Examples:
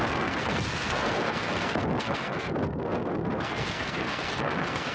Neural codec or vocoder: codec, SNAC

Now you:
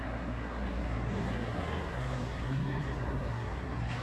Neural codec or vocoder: codec, SNAC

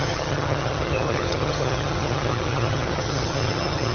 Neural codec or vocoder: vocoder, HiFi-GAN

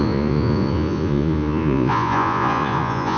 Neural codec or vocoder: vocoder, Vocos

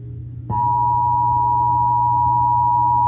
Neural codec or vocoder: none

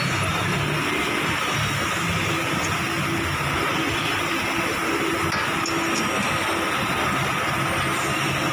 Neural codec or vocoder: none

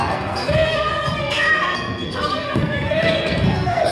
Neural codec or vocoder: codec, SNAC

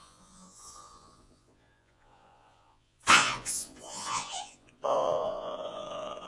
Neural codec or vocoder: vocoder, Vocos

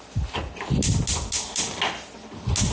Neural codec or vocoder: none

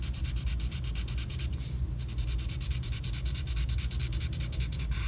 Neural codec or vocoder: vocoder, BigVGAN v2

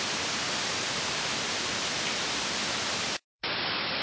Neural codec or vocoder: vocoder, BigVGAN v2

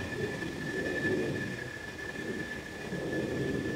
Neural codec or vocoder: none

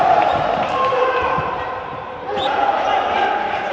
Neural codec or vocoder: vocoder, BigVGAN v2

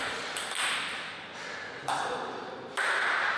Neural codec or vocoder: none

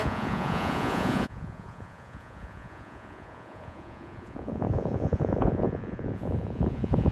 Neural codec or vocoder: vocoder, Vocos